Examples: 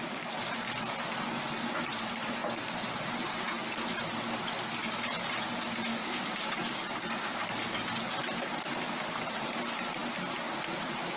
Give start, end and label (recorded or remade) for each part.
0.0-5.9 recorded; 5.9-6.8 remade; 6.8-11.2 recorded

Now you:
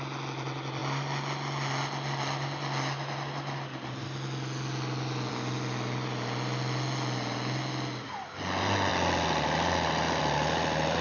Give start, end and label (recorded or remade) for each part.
0.0-11.0 recorded

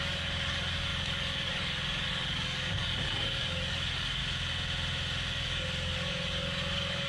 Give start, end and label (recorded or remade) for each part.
0.0-4.2 remade; 4.2-5.3 recorded; 5.3-7.1 remade

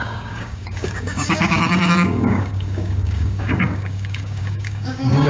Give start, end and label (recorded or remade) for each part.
0.0-5.3 remade

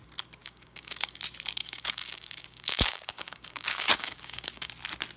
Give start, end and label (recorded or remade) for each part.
0.0-0.4 recorded; 0.4-1.2 remade; 1.2-1.6 recorded; 1.6-4.7 remade; 4.7-5.2 recorded